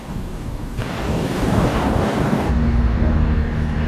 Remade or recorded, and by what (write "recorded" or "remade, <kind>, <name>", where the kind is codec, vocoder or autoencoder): remade, codec, DAC